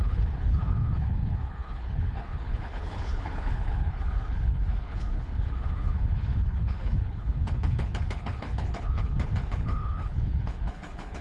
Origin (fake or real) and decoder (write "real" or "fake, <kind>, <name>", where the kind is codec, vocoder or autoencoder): fake, codec, HILCodec